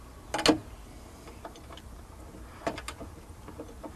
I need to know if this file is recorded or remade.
recorded